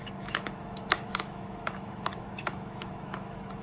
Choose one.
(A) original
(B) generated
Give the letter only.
B